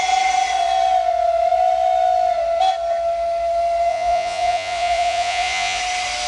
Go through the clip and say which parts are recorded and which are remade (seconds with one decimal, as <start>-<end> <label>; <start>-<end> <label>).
0.0-3.9 recorded; 3.9-5.8 remade; 5.8-6.3 recorded